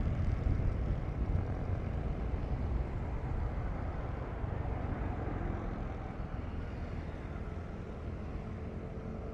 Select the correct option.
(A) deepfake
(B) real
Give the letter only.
B